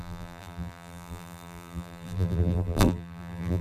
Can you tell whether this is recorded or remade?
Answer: remade